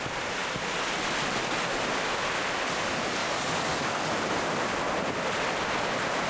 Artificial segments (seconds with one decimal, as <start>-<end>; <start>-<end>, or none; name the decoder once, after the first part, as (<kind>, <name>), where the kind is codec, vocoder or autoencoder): 3.2-4.1 (codec, DAC)